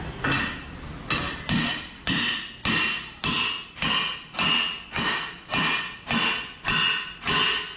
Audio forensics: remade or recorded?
recorded